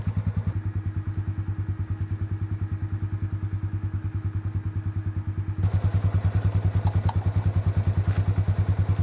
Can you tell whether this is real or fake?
real